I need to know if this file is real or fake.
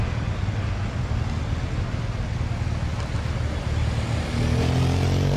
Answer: real